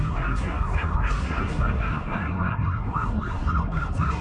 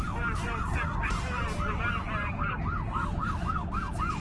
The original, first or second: second